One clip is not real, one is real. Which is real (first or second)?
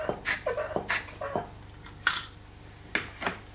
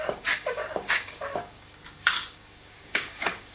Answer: first